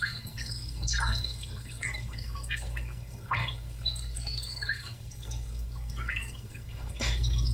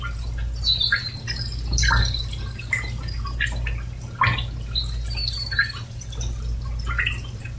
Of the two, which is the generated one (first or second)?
first